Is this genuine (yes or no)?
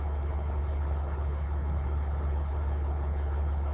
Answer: no